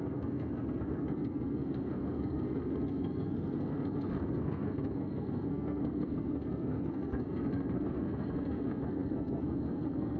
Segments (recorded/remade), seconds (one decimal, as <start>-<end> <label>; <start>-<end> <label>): 0.0-10.2 remade